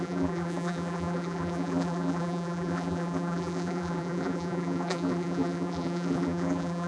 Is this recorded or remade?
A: remade